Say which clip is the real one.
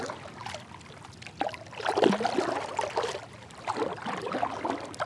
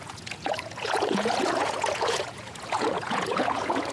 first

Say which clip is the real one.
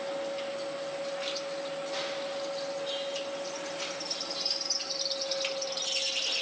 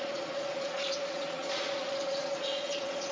first